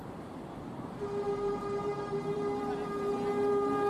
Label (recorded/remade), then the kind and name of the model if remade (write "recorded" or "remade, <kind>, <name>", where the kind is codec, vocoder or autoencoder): remade, vocoder, BigVGAN v2